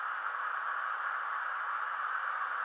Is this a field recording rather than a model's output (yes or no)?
yes